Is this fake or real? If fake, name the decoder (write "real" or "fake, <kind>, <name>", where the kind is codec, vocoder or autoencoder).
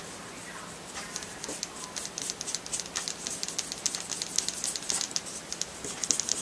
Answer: real